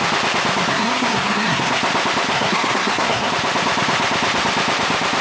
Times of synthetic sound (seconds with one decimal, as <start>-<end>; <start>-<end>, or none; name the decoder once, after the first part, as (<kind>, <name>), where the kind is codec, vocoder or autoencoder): 0.7-1.8 (codec, SNAC); 2.3-3.3